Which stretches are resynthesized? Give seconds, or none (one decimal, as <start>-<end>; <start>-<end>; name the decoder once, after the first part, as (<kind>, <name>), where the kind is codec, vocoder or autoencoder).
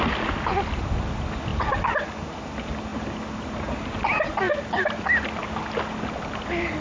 none